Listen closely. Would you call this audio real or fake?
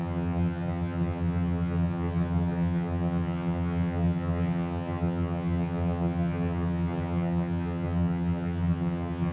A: fake